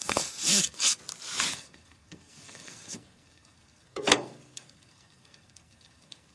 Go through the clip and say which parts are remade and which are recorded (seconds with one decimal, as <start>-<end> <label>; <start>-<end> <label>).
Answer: 0.0-1.0 remade; 1.0-1.5 recorded; 1.5-6.3 remade